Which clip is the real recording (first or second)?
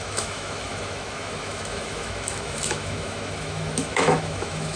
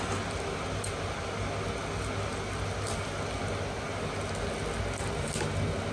second